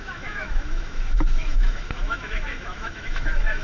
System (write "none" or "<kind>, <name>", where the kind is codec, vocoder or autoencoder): autoencoder, DAC-VAE